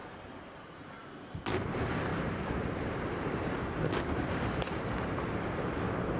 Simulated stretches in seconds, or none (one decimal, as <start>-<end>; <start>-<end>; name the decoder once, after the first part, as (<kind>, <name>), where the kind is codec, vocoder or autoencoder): 0.0-1.1 (vocoder, BigVGAN v2); 2.1-5.8